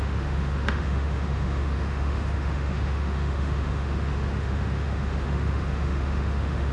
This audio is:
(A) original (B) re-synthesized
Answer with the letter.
B